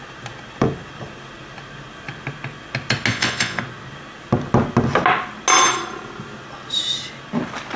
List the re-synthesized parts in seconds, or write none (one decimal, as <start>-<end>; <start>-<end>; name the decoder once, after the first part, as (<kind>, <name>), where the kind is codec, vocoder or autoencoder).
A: 3.1-3.6 (vocoder, Vocos)